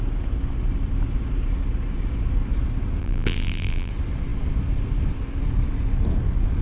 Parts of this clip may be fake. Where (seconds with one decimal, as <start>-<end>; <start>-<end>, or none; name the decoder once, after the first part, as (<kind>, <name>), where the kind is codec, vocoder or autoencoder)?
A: 3.0-3.9 (vocoder, BigVGAN v2)